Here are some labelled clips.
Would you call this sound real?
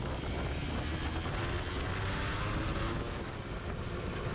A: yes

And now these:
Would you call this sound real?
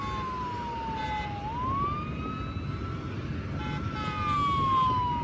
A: yes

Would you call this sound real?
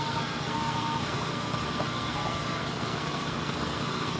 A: no